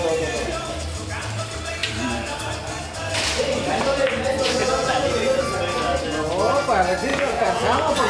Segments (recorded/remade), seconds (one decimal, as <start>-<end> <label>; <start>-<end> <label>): 0.0-4.6 recorded; 4.6-5.1 remade; 5.1-7.1 recorded; 7.1-8.1 remade